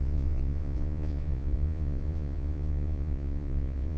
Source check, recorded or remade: remade